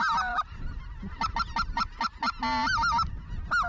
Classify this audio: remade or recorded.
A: recorded